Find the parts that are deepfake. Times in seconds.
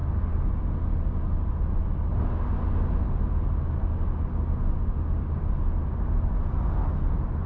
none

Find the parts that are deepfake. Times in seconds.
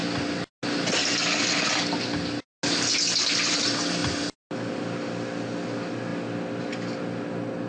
none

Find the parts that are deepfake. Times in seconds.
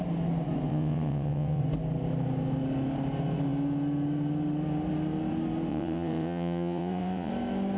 0.7-1.6 (vocoder, WaveNeXt); 5.7-7.3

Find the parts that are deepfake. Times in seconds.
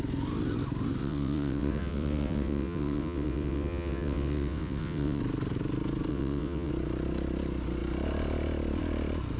1.0-5.2 (vocoder, WaveNeXt); 6.1-6.7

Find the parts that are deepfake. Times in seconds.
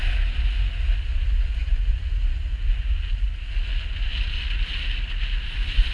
none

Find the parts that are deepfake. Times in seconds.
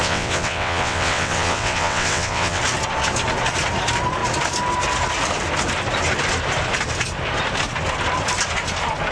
0.0-2.6 (vocoder, WaveNeXt)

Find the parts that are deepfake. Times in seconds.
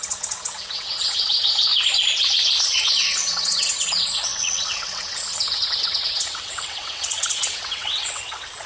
0.0-1.7 (vocoder, WaveNeXt); 2.6-8.7